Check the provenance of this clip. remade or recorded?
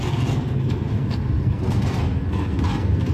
remade